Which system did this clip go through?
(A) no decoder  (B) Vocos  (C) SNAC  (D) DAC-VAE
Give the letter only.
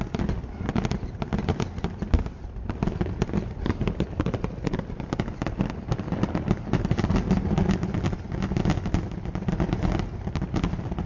A